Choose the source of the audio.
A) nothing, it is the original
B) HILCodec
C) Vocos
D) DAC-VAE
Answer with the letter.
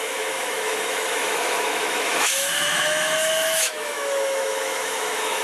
D